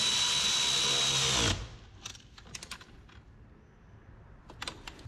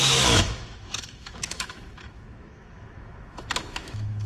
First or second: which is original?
first